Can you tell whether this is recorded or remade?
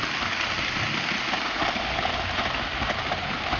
recorded